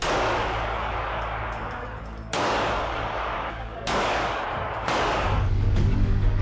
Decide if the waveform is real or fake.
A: fake